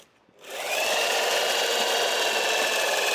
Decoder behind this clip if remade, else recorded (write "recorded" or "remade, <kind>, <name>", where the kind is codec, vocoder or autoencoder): remade, vocoder, BigVGAN v2